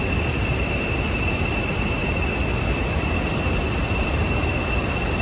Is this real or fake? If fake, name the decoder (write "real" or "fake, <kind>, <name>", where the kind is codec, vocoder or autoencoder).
real